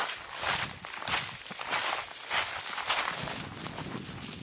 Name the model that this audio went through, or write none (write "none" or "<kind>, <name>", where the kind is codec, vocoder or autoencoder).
none